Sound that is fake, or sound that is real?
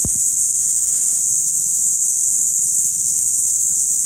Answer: fake